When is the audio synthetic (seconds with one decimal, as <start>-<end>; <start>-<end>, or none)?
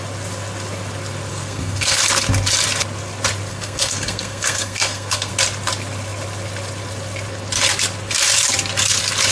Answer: 1.3-2.0; 3.5-5.3